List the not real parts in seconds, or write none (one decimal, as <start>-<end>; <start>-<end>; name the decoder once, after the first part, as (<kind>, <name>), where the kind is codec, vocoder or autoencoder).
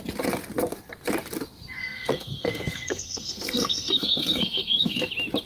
1.8-5.1 (codec, SNAC)